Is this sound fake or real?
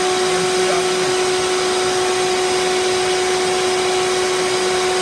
real